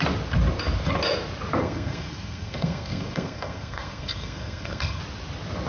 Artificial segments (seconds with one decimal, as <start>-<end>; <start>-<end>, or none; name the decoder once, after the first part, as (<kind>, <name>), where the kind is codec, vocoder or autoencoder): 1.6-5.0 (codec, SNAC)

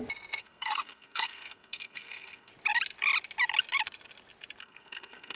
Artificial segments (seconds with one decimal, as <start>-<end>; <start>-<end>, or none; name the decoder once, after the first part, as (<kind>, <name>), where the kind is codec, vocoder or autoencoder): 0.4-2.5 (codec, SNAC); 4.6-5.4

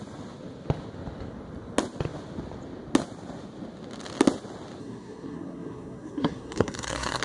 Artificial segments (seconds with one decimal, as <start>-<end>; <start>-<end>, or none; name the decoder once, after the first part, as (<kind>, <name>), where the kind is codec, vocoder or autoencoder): 4.8-7.2 (codec, SNAC)

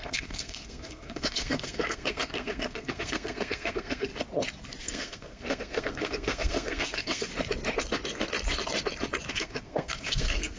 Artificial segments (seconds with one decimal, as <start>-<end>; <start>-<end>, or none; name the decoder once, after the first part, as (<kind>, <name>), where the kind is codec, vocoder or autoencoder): 0.0-4.1 (codec, SNAC); 4.8-7.3; 9.3-10.6

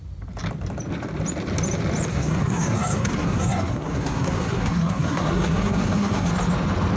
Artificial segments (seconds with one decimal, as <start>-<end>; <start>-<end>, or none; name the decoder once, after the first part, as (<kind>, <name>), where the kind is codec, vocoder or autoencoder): 2.1-6.3 (codec, SNAC)